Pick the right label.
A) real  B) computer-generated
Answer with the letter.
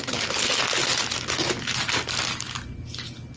A